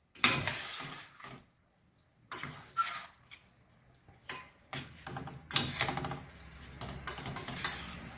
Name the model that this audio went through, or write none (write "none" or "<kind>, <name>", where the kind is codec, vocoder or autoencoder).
none